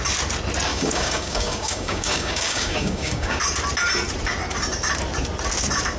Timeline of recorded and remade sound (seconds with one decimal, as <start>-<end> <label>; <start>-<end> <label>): 0.0-0.7 recorded; 0.7-3.4 remade; 3.4-6.0 recorded